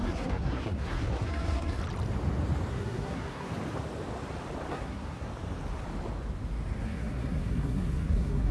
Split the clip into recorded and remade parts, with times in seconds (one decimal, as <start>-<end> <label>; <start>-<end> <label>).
0.0-1.8 remade; 1.8-2.7 recorded; 2.7-3.5 remade; 3.5-4.7 recorded; 4.7-5.3 remade; 5.3-6.8 recorded; 6.8-8.5 remade